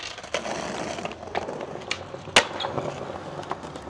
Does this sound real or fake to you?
real